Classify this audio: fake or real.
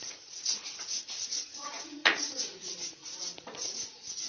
fake